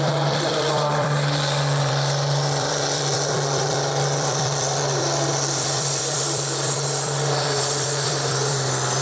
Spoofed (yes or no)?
yes